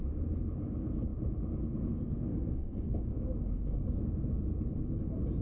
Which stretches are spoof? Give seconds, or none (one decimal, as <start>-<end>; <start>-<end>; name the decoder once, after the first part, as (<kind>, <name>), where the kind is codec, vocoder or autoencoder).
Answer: 2.3-4.0 (codec, SNAC)